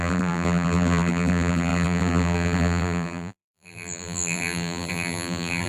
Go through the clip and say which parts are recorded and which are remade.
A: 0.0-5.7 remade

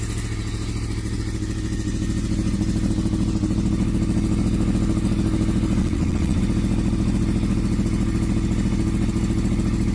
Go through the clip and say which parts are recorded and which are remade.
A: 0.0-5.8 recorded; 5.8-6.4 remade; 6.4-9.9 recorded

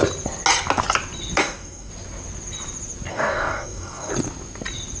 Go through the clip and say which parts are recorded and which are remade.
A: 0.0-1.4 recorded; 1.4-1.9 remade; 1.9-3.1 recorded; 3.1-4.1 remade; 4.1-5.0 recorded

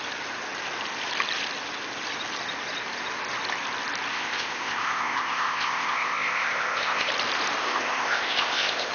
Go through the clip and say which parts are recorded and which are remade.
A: 0.0-4.1 recorded; 4.1-7.1 remade; 7.1-7.6 recorded; 7.6-8.9 remade

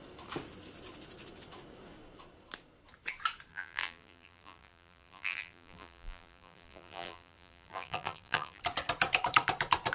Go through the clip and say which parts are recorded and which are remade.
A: 0.0-3.5 recorded; 3.5-8.6 remade; 8.6-9.9 recorded